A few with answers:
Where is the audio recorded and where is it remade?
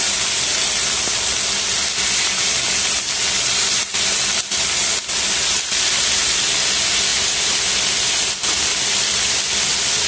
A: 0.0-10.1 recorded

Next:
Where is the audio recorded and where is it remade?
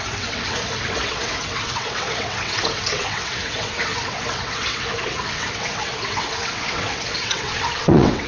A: 0.0-8.3 remade